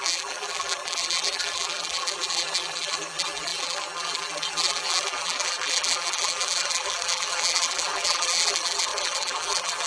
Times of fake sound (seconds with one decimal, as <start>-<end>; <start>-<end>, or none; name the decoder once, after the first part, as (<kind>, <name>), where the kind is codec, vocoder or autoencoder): 0.0-9.9 (vocoder, BigVGAN v2)